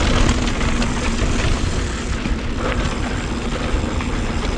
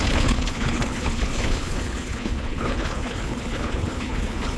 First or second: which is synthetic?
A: second